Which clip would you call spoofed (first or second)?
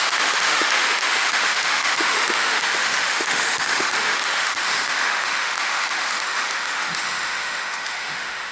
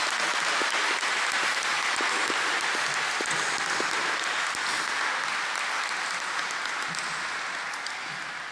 first